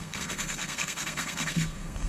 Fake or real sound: fake